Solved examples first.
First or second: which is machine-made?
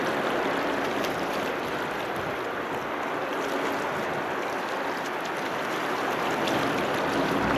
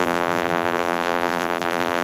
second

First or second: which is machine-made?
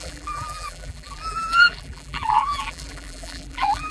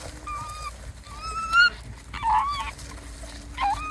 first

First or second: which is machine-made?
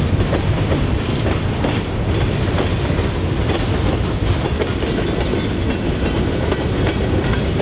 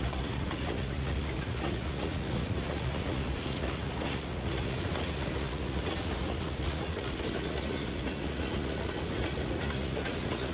second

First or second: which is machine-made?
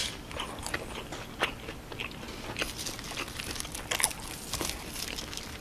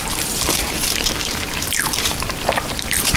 second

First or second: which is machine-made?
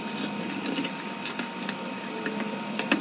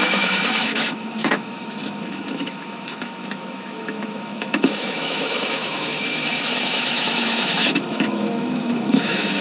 second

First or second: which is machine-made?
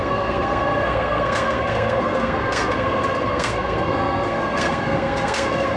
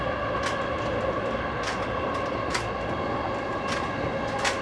first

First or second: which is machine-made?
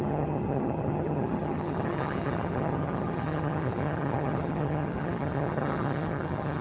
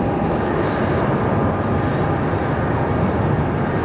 first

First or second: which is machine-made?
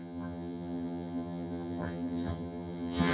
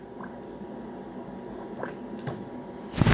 first